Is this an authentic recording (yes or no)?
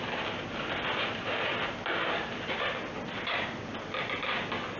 yes